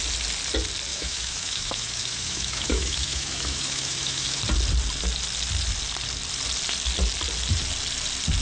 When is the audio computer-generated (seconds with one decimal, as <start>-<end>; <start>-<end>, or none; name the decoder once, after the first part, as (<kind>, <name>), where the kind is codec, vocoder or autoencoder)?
0.9-4.4 (autoencoder, DAC-VAE)